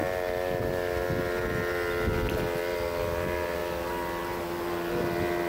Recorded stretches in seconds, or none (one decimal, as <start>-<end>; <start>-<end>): 0.0-5.5